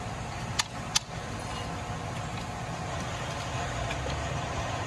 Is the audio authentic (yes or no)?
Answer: yes